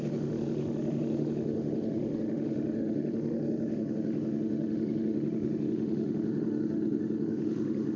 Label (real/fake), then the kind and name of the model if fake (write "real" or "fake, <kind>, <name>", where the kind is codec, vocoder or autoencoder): fake, autoencoder, DAC-VAE